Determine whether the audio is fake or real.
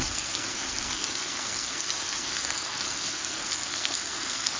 fake